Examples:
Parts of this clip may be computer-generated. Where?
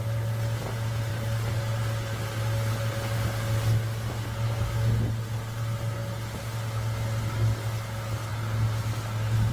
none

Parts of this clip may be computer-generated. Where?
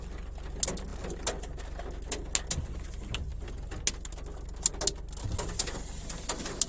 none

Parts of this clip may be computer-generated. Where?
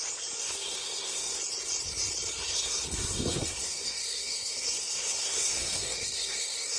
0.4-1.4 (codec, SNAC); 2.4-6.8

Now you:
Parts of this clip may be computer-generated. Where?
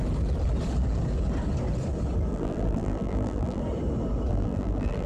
2.3-3.6 (vocoder, BigVGAN v2); 4.3-5.1